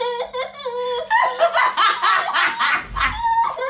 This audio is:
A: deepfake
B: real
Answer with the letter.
B